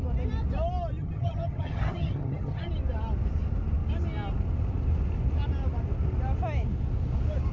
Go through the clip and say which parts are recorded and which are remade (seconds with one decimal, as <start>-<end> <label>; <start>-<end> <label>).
0.0-1.0 recorded; 1.0-2.7 remade; 2.7-7.5 recorded